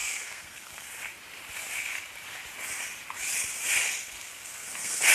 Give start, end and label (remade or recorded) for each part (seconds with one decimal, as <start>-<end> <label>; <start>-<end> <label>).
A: 0.0-0.9 remade; 0.9-4.0 recorded; 4.0-5.1 remade